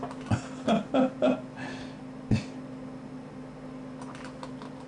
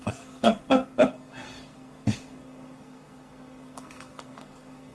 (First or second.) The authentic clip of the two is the first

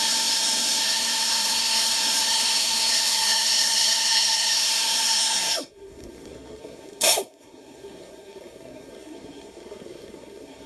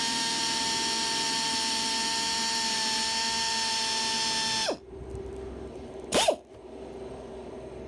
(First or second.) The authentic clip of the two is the second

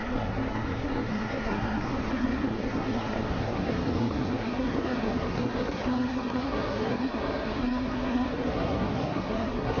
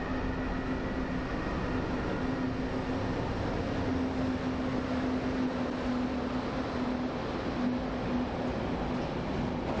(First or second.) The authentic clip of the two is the second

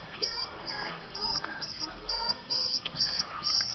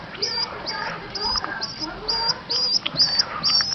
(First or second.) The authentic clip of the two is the second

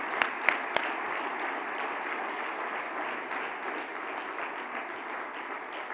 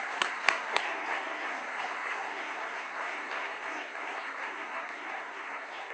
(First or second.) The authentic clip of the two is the first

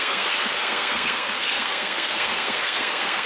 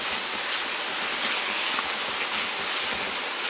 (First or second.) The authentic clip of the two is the second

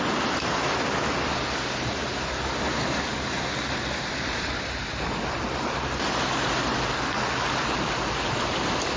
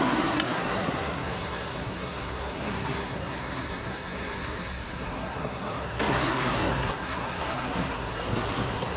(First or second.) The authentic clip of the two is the first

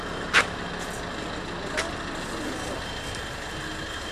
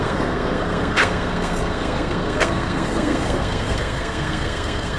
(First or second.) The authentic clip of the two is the first